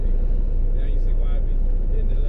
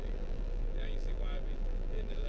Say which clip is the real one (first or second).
first